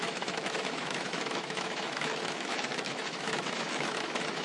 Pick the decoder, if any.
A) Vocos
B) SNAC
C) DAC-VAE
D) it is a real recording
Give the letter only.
C